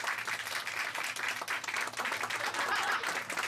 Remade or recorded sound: recorded